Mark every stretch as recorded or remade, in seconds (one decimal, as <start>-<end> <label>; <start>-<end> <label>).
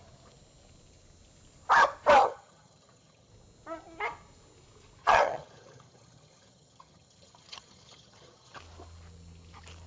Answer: 0.0-2.2 recorded; 2.2-3.3 remade; 3.3-5.0 recorded; 5.0-8.6 remade; 8.6-9.9 recorded